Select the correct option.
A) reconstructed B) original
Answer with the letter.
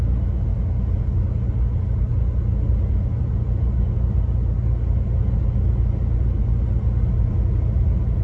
B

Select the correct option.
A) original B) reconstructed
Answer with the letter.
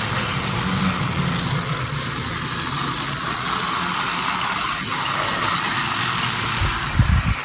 A